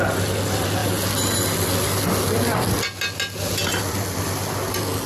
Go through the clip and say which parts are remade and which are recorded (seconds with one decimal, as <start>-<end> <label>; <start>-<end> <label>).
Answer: 0.0-5.1 recorded